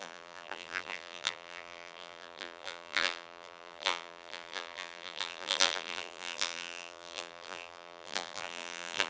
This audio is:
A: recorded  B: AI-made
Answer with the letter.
B